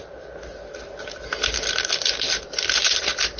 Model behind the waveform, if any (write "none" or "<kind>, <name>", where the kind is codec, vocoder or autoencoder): none